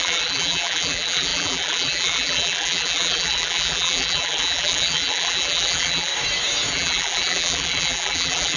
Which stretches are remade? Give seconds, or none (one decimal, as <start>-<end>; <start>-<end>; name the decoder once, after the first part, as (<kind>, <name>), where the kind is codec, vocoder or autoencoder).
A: 0.0-6.1 (vocoder, BigVGAN v2); 6.7-8.6